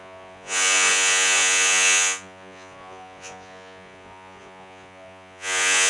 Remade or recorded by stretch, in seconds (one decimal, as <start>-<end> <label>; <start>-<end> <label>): 0.0-5.9 remade